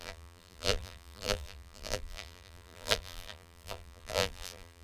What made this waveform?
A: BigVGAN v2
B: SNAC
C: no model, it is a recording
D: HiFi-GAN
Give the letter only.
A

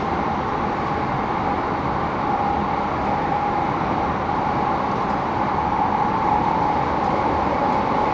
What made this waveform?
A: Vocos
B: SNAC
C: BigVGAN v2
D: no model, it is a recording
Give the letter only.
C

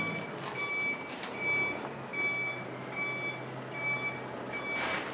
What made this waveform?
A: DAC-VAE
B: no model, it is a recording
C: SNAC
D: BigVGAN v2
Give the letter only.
B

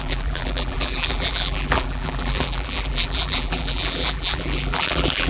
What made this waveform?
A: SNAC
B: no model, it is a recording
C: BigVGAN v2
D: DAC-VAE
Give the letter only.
C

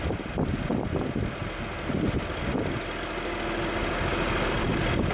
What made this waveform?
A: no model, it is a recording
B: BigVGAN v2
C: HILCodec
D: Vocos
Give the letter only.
A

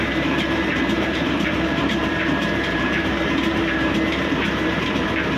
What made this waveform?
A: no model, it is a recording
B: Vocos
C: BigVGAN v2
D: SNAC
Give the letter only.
C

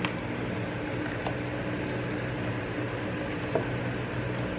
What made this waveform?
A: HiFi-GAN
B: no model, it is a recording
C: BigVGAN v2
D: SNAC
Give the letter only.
B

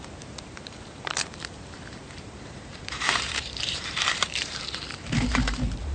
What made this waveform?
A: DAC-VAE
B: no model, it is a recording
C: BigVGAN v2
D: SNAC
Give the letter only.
C